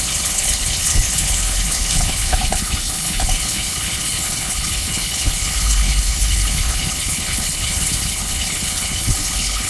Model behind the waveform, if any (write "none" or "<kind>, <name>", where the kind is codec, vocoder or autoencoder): codec, HILCodec